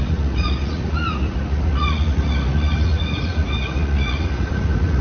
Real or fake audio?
fake